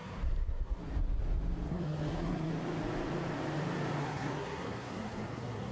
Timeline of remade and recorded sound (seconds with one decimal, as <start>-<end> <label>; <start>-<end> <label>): 0.0-0.8 remade; 0.8-1.7 recorded; 1.7-2.5 remade; 2.5-4.0 recorded; 4.0-5.7 remade

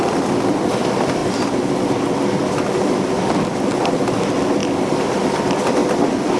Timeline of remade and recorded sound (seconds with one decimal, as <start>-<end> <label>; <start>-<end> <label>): 0.0-6.4 recorded

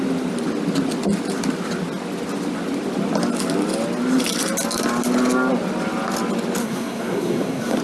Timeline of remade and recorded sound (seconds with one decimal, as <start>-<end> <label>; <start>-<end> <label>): 0.0-6.6 recorded; 6.6-7.8 remade

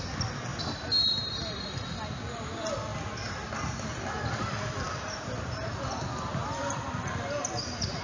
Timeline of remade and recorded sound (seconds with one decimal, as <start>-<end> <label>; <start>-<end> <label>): 0.0-8.0 recorded

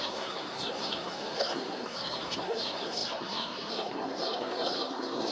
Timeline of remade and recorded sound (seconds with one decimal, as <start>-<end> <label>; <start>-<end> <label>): 0.0-5.3 remade

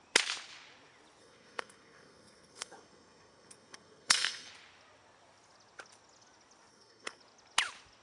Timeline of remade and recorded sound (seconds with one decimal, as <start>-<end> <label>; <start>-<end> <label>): 0.0-1.2 recorded; 1.2-4.5 remade; 4.5-6.7 recorded; 6.7-7.2 remade; 7.2-8.0 recorded

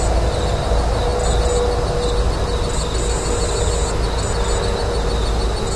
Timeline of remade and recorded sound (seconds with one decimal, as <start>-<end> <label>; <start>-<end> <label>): 0.0-5.8 recorded

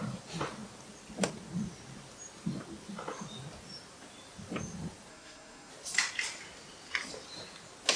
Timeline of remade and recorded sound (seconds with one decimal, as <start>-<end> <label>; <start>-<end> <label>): 0.0-5.1 recorded; 5.1-5.7 remade; 5.7-8.0 recorded